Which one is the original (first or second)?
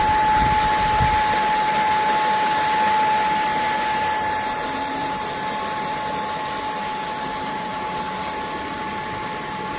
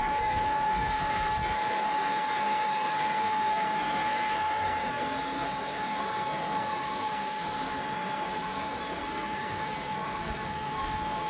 first